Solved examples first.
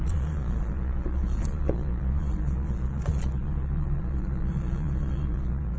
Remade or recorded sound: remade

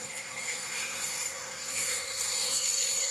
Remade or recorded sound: remade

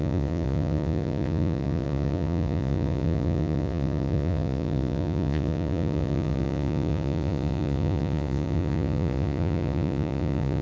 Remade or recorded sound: remade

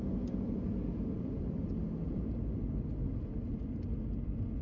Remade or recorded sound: recorded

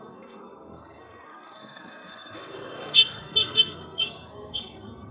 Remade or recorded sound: remade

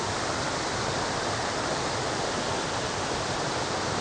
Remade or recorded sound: remade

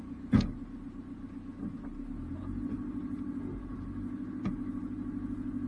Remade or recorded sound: recorded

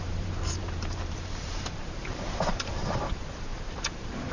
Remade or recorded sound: remade